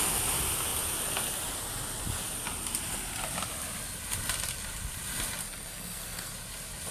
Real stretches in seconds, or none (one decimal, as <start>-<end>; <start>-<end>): 0.0-5.4; 6.3-6.9